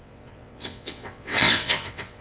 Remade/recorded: remade